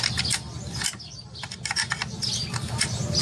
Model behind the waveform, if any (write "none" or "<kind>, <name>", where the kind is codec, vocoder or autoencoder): none